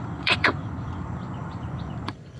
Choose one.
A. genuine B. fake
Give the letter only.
B